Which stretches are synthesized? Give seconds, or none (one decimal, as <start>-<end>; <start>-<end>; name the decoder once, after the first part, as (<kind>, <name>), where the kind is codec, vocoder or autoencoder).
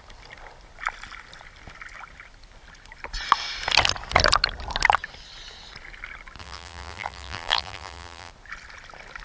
6.4-8.3 (vocoder, BigVGAN v2)